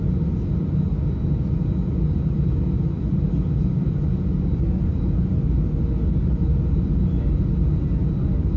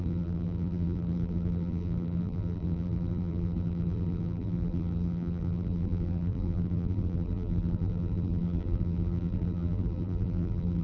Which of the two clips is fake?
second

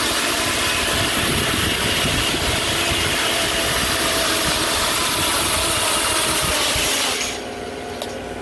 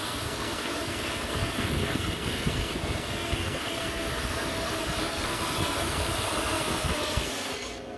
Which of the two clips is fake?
second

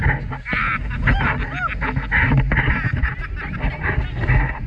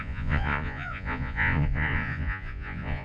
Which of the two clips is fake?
second